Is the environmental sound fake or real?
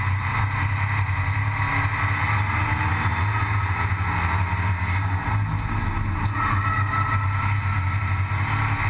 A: real